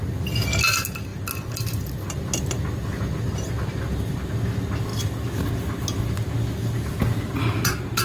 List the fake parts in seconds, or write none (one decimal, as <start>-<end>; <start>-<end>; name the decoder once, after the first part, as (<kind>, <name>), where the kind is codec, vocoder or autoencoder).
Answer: none